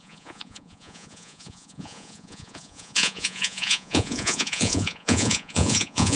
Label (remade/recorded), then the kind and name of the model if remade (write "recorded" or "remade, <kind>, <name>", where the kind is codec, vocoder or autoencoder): remade, vocoder, Vocos